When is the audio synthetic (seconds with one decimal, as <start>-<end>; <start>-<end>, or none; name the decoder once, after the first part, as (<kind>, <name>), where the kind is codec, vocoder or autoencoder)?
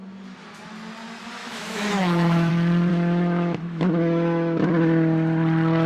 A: 1.4-2.5 (autoencoder, DAC-VAE); 2.9-4.7